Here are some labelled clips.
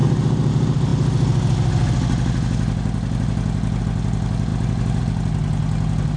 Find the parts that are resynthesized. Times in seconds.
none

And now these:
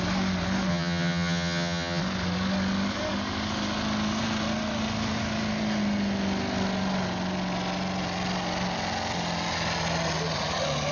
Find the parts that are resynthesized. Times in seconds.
0.7-2.0 (vocoder, HiFi-GAN)

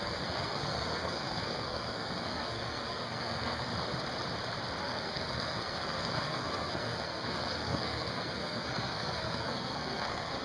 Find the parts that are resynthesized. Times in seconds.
0.0-3.7 (codec, SNAC); 4.8-10.4

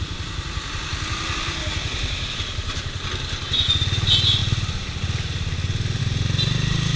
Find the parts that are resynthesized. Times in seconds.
none

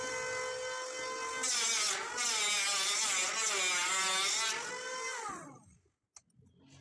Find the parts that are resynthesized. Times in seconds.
none

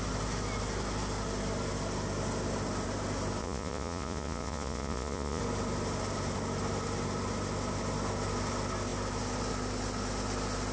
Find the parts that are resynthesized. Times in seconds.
3.4-5.4 (vocoder, Vocos)

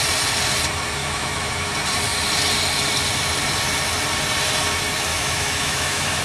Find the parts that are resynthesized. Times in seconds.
1.0-1.7 (autoencoder, DAC-VAE); 5.1-6.2

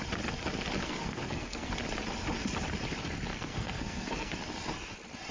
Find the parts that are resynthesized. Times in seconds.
0.8-1.7 (codec, SNAC); 3.3-4.3